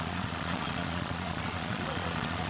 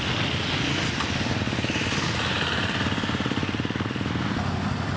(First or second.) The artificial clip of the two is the first